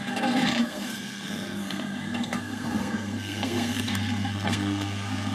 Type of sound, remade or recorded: remade